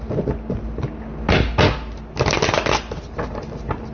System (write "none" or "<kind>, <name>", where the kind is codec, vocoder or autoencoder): none